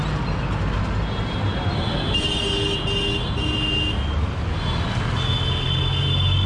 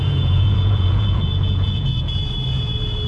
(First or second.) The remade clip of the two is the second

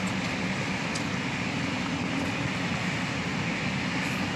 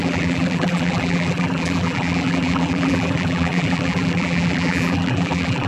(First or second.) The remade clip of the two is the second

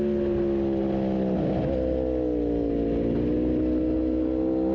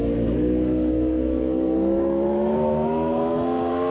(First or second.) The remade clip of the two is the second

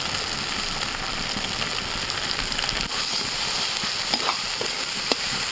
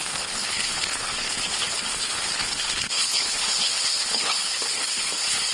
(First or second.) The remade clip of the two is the second